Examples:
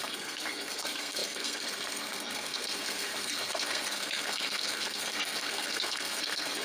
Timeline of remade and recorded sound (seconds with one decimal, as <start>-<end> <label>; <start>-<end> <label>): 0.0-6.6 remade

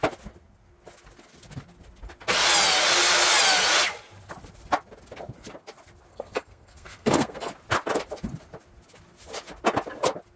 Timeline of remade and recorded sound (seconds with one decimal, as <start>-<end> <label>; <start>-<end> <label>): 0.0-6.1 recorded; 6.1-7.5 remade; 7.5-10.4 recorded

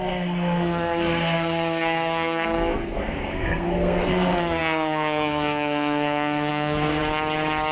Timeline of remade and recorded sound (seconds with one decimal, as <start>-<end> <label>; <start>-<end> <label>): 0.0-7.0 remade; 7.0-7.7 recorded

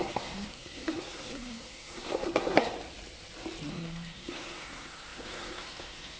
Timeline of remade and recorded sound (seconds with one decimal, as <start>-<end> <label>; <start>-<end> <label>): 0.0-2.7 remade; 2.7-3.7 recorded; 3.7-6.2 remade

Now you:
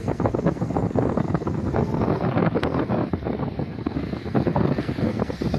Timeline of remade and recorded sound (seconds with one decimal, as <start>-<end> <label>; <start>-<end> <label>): 0.0-5.6 remade

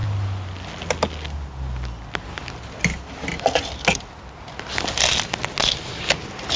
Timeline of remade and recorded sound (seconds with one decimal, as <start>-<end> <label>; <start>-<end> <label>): 0.0-6.6 recorded